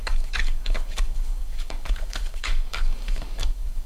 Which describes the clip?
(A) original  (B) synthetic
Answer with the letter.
B